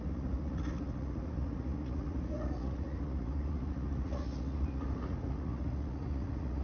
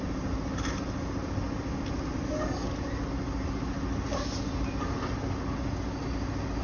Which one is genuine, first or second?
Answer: second